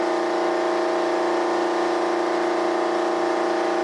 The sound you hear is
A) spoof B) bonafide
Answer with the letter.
B